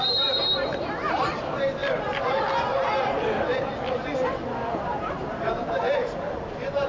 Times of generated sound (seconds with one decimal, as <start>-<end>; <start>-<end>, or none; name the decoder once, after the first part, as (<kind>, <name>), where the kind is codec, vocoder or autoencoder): 0.0-1.8 (vocoder, BigVGAN v2); 4.7-6.9